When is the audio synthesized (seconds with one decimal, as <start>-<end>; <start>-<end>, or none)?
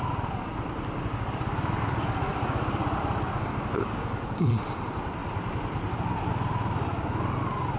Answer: 0.0-7.8